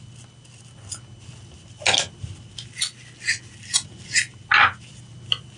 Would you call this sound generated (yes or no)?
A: no